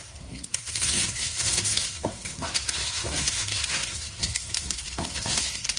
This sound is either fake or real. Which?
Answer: fake